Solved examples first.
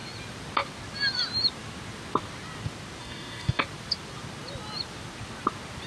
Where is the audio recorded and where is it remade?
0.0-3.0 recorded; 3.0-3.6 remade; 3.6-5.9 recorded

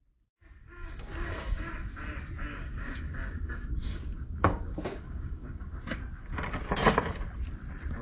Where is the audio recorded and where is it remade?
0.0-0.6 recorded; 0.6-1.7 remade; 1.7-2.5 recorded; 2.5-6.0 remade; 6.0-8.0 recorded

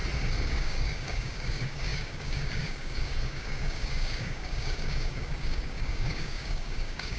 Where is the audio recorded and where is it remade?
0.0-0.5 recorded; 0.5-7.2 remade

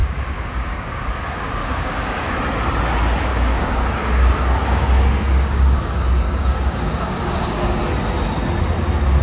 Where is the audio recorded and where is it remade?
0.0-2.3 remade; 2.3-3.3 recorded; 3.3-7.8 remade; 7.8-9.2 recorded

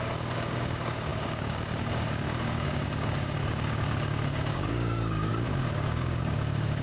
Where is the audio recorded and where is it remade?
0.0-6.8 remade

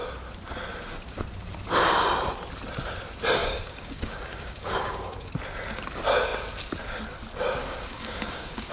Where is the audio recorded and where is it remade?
0.0-3.4 recorded; 3.4-5.3 remade; 5.3-7.6 recorded; 7.6-8.7 remade

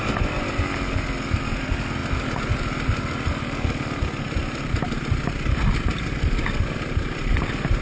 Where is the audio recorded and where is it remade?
0.0-7.8 recorded